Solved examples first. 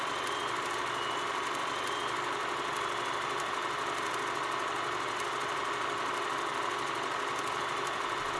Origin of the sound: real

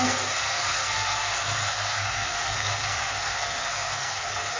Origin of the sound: fake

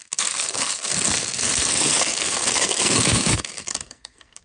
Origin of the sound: fake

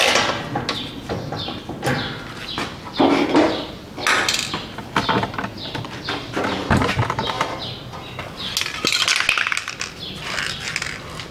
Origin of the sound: real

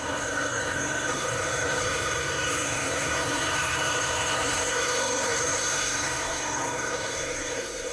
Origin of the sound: fake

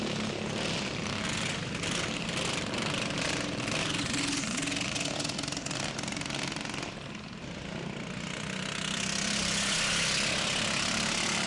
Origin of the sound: real